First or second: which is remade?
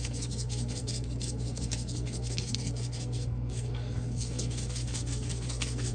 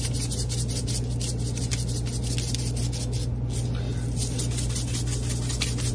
first